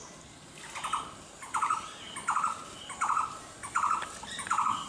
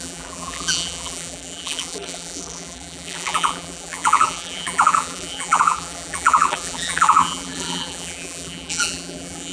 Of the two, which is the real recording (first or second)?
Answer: first